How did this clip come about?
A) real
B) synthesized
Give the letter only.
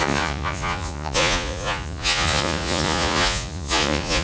B